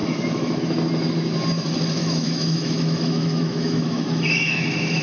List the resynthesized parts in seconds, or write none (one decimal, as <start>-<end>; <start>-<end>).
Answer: 0.0-0.6; 2.0-5.0